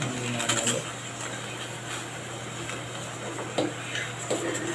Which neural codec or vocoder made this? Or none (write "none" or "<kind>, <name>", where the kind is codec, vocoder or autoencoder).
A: none